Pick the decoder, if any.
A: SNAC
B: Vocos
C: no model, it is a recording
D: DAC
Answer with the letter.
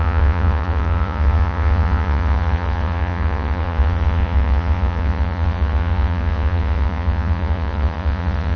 B